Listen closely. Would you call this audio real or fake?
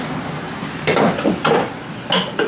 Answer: real